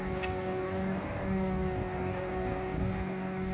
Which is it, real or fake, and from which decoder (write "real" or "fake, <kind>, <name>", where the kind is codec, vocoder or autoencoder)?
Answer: fake, codec, DAC